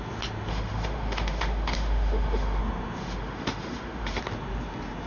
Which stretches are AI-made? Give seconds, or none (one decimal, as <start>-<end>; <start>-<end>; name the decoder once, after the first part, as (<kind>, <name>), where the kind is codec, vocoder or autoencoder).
0.5-2.6 (autoencoder, DAC-VAE); 3.0-4.2